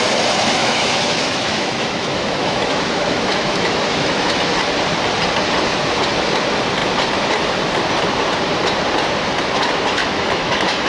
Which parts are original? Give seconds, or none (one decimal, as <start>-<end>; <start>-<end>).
0.0-0.6; 4.4-10.0